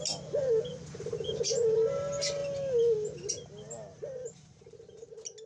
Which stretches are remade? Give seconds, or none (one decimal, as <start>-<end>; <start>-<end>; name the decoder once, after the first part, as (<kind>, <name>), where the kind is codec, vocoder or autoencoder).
0.7-1.4 (vocoder, BigVGAN v2); 3.9-5.1

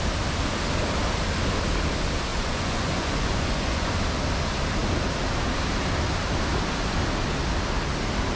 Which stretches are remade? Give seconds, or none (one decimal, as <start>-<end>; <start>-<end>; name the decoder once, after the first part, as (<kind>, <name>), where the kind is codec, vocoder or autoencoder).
2.3-3.9 (vocoder, Vocos)

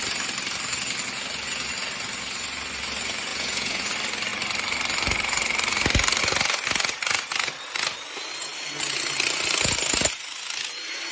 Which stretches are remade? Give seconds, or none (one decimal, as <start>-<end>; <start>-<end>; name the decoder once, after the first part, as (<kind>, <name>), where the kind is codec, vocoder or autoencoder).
3.3-3.9 (vocoder, Vocos)

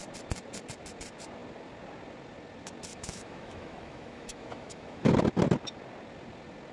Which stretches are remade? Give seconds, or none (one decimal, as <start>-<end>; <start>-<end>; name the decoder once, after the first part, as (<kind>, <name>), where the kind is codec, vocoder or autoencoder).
2.9-5.1 (autoencoder, DAC-VAE)

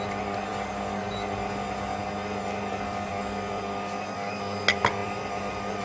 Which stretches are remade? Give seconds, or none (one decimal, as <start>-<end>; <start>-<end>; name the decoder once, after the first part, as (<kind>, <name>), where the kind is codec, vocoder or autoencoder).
none

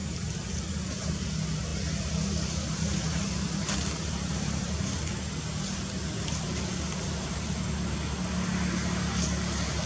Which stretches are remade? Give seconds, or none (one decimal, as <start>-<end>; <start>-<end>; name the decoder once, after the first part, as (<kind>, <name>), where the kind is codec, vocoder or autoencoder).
none

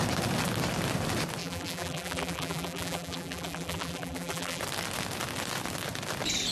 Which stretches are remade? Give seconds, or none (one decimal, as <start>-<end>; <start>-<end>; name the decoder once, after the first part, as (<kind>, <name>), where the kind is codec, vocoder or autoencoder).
1.4-4.6 (vocoder, BigVGAN v2)